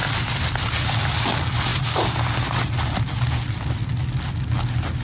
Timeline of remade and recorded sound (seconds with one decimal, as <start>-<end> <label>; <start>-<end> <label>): 0.0-5.0 recorded